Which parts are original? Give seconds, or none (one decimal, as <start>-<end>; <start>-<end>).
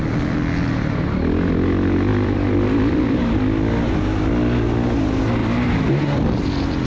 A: 0.0-2.1; 3.4-5.4; 5.9-6.9